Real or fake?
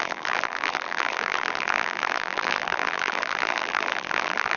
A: fake